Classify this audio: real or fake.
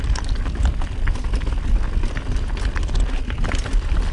real